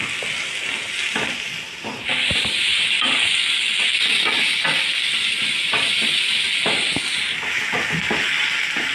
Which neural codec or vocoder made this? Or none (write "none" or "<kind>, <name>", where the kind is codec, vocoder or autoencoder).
none